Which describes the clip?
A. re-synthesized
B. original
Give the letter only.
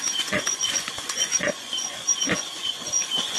A